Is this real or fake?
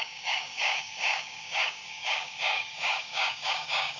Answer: fake